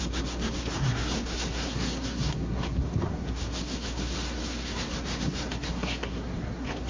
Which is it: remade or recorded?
remade